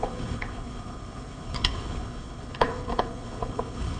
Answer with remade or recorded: remade